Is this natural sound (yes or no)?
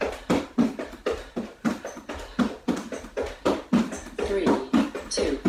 no